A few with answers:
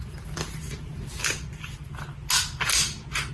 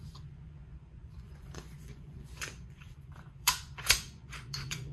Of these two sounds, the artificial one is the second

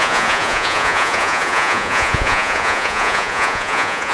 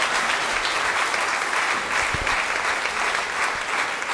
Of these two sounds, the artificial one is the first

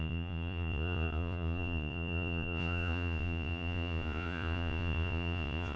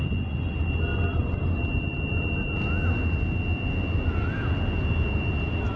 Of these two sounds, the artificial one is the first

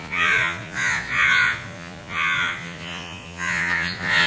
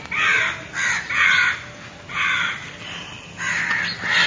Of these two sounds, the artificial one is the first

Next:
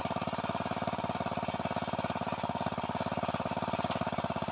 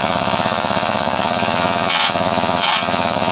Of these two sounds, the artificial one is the second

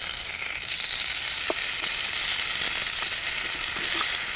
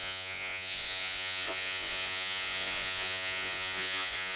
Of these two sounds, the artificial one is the second